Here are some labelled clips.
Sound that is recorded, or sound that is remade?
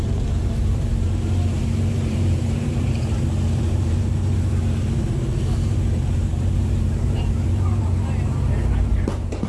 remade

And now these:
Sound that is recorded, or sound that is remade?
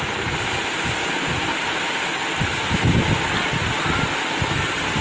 recorded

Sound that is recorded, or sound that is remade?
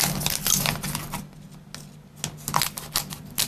recorded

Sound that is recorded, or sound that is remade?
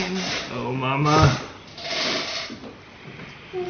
recorded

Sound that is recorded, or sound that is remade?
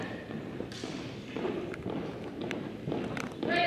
recorded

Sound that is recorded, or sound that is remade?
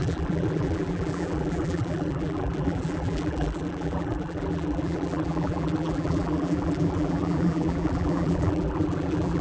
remade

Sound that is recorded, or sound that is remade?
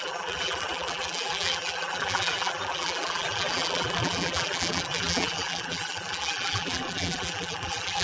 remade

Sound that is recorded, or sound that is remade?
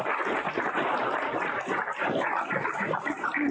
remade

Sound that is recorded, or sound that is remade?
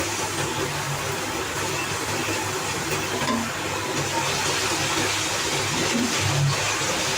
recorded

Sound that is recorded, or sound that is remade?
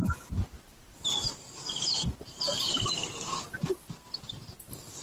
recorded